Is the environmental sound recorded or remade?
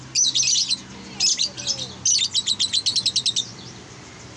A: recorded